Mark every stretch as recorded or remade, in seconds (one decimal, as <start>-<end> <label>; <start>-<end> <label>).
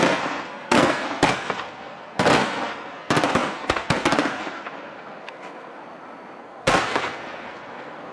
0.0-5.8 remade; 5.8-6.4 recorded; 6.4-8.1 remade